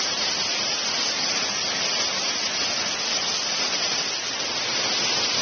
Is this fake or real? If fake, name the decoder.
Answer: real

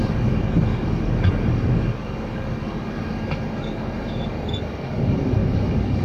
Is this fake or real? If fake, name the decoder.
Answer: fake, codec, DAC